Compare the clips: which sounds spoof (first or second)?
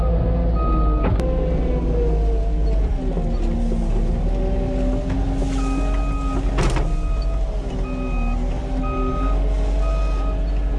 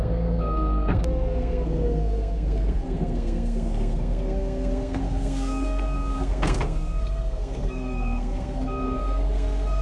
second